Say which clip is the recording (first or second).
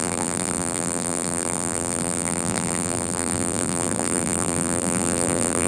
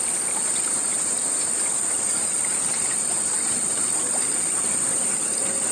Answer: second